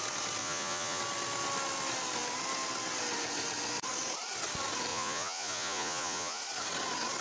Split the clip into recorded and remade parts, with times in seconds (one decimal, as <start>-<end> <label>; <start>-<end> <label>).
0.0-0.4 recorded; 0.4-1.0 remade; 1.0-4.9 recorded; 4.9-6.4 remade; 6.4-7.2 recorded